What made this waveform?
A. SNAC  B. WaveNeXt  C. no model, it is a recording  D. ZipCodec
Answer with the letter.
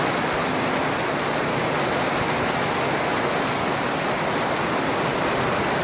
C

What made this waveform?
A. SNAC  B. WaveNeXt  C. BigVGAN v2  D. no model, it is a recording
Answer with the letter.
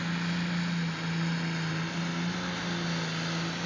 D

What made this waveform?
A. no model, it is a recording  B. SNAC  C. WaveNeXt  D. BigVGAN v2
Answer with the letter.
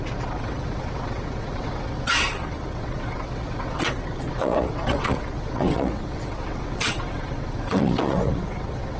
C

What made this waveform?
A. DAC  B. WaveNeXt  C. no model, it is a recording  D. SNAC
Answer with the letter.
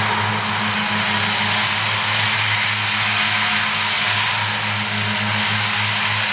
C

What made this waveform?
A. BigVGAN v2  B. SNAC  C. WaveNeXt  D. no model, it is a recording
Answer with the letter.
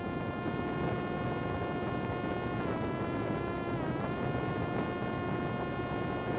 D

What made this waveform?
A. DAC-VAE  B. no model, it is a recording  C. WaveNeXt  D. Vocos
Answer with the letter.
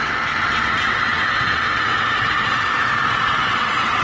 C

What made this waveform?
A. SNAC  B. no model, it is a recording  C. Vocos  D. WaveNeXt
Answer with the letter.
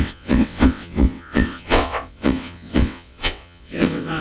D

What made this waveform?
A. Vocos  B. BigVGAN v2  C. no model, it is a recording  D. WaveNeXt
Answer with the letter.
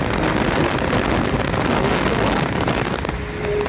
C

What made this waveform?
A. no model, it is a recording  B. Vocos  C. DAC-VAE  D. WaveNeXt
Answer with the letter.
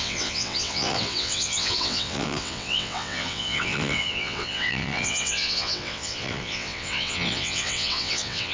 D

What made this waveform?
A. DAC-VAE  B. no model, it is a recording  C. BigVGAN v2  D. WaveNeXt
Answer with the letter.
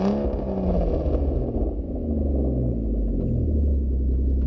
B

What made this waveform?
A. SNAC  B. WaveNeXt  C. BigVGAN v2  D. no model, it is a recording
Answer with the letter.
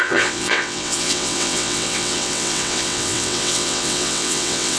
B